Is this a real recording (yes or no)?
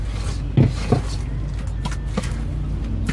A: yes